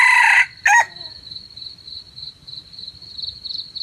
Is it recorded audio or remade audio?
recorded